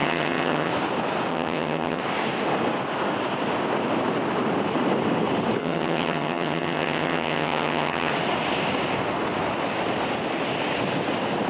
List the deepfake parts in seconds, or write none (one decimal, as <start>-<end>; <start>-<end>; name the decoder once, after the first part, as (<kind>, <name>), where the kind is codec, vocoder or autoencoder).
0.0-0.7 (vocoder, HiFi-GAN); 1.3-2.0; 5.6-8.1